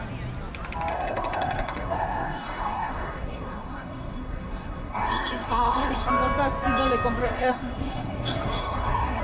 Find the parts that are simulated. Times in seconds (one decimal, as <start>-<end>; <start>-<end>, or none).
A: 0.9-6.1; 7.2-9.2